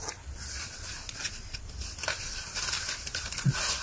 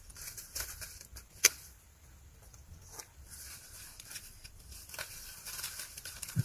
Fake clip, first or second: second